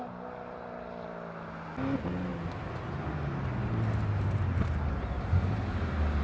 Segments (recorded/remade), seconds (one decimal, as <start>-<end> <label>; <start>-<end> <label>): 0.0-6.2 recorded